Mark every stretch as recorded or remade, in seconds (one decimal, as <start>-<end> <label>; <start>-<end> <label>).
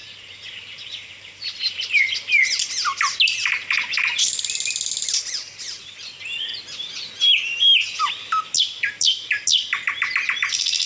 0.0-1.9 remade; 1.9-10.9 recorded